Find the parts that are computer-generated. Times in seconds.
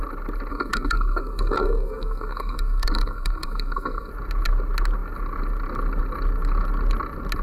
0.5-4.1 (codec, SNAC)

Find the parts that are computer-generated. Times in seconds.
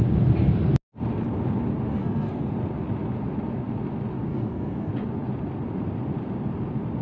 1.9-2.5 (codec, SNAC); 4.3-4.9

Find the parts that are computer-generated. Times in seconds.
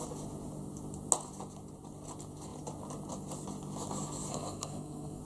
4.3-5.2 (codec, SNAC)